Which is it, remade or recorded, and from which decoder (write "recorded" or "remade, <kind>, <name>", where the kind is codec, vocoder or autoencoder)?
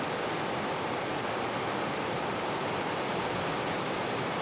recorded